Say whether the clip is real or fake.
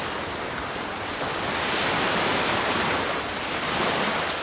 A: real